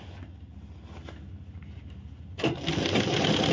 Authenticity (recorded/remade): recorded